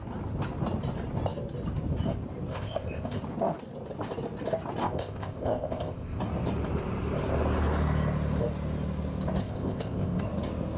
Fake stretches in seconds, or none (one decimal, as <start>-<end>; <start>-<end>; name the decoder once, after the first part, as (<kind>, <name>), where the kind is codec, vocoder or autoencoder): 2.5-3.2 (codec, ZipCodec); 4.8-6.2; 9.4-10.2